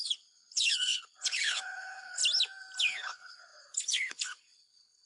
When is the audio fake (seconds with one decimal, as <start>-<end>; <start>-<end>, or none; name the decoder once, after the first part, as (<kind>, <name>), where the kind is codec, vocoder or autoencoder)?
0.0-2.2 (codec, HILCodec); 2.8-5.1